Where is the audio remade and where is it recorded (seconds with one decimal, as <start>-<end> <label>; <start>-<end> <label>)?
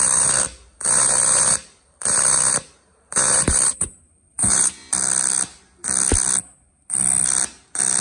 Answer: 0.0-4.8 remade; 4.8-8.0 recorded